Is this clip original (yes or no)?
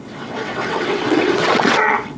no